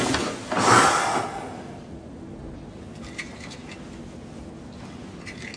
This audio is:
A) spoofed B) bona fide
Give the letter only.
B